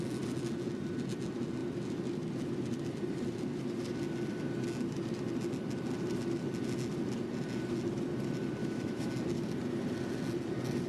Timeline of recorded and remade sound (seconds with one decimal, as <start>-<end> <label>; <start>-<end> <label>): 0.0-8.6 recorded; 8.6-9.1 remade; 9.1-10.9 recorded